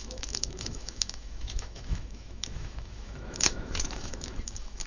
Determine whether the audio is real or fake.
fake